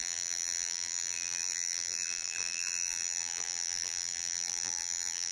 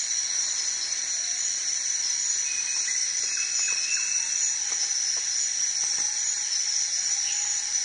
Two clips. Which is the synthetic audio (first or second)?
first